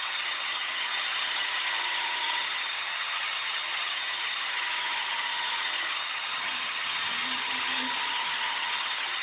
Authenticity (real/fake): fake